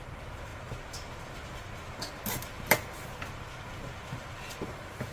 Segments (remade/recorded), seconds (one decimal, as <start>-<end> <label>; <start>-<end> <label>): 0.0-5.1 recorded

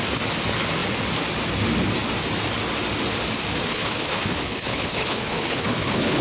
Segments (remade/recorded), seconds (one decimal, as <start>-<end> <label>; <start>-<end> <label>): 0.0-3.7 recorded; 3.7-6.2 remade